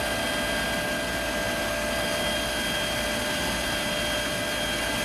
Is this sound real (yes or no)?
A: yes